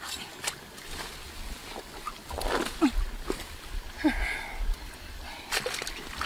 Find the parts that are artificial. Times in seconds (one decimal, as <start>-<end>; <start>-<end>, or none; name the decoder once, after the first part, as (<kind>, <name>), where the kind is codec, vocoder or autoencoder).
none